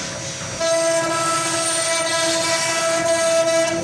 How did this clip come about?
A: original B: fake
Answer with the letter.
A